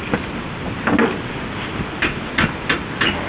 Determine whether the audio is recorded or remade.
recorded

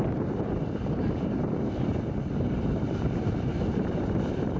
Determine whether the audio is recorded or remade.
remade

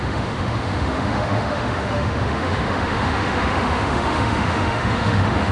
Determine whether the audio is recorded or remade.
remade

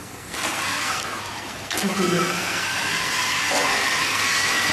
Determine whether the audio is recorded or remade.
remade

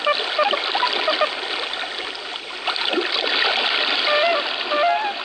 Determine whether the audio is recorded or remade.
recorded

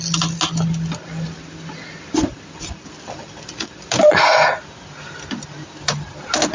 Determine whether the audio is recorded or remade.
recorded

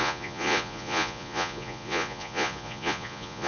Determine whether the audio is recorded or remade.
remade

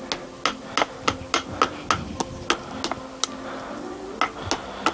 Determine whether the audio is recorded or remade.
recorded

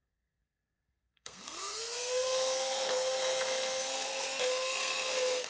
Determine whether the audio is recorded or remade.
remade